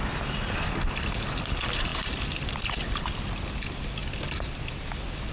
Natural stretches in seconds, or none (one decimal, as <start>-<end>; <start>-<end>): 0.0-5.3